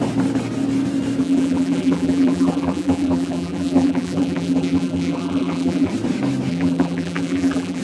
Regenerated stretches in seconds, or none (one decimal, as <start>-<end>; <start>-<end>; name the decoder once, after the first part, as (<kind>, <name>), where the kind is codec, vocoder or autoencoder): 1.2-5.9 (vocoder, BigVGAN v2); 6.5-7.8